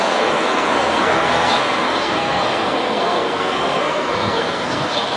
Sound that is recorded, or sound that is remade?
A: remade